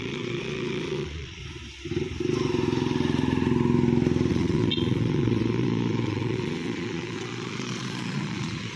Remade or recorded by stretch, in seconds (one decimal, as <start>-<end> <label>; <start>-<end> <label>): 0.0-1.4 remade; 1.4-4.3 recorded; 4.3-8.8 remade